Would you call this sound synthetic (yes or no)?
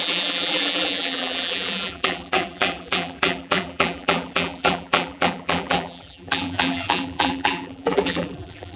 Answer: yes